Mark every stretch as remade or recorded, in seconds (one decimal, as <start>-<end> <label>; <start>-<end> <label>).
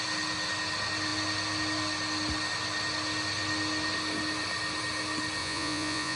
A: 0.0-5.4 recorded; 5.4-6.2 remade